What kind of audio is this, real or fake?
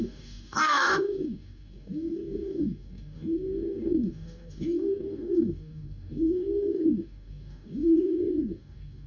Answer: fake